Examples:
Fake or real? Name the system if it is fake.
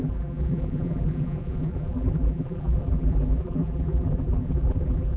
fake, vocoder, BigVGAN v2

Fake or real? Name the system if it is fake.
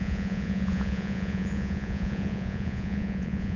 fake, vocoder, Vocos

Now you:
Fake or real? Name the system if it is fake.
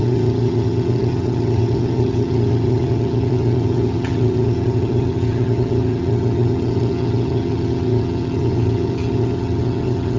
fake, vocoder, HiFi-GAN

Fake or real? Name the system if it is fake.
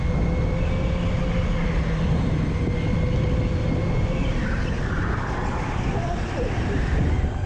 real